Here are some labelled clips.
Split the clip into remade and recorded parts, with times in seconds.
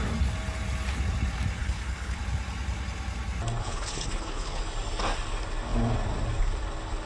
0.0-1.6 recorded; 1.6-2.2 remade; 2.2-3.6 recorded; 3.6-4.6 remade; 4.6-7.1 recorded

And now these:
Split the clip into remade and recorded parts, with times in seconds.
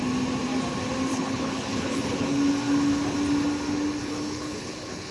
0.0-1.1 recorded; 1.1-2.4 remade; 2.4-4.0 recorded; 4.0-5.1 remade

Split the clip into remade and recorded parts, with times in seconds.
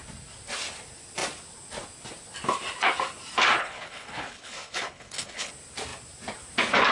0.0-3.6 recorded; 3.6-5.5 remade; 5.5-6.9 recorded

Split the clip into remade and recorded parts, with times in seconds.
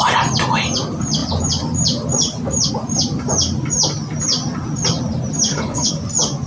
0.0-5.5 recorded; 5.5-6.0 remade; 6.0-6.5 recorded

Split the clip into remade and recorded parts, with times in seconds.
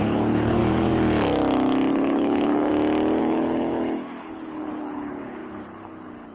0.0-0.6 remade; 0.6-1.9 recorded; 1.9-2.7 remade; 2.7-3.2 recorded; 3.2-6.3 remade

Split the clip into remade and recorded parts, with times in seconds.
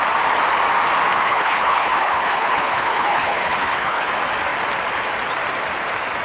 0.0-1.2 recorded; 1.2-4.1 remade; 4.1-6.2 recorded